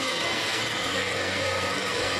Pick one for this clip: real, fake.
fake